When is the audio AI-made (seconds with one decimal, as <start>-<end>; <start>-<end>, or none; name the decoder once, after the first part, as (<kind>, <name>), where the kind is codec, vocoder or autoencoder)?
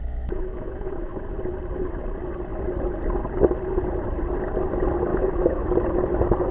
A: 0.0-1.2 (autoencoder, DAC-VAE); 5.1-5.7